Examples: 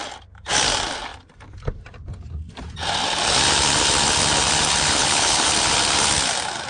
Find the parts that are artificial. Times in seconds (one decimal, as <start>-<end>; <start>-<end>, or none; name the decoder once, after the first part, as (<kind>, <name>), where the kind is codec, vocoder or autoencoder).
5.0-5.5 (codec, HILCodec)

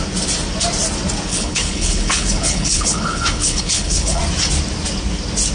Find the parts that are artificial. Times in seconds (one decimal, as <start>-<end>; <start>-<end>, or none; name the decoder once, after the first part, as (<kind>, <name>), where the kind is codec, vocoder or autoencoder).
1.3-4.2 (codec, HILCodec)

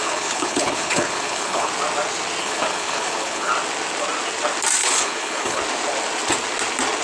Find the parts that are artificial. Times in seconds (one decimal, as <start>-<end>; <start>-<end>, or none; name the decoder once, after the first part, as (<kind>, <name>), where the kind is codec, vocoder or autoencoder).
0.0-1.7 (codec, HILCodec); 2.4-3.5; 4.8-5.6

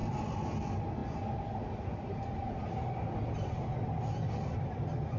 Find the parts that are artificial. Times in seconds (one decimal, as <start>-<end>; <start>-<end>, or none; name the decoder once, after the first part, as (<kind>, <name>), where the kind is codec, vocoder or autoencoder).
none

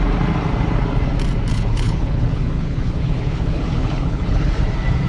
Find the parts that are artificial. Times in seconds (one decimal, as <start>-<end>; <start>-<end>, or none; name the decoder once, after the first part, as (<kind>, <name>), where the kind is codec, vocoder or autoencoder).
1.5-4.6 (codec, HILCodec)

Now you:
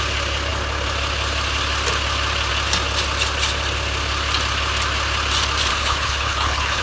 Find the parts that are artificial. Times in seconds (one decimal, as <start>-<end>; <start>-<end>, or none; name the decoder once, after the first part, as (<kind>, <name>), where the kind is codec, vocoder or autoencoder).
5.7-6.8 (codec, HILCodec)

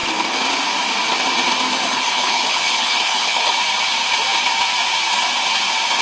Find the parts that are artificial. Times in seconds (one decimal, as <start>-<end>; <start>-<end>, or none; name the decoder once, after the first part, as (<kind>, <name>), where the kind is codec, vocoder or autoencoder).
1.9-3.5 (codec, HILCodec)

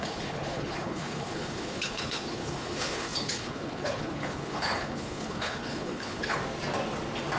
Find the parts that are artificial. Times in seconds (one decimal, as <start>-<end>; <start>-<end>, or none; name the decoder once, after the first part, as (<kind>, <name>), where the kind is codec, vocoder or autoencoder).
0.0-6.4 (codec, HILCodec)